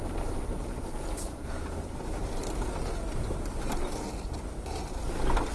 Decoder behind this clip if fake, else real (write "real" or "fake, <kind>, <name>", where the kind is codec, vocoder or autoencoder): real